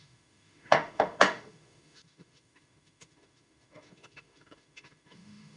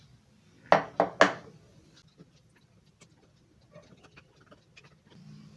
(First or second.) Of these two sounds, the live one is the second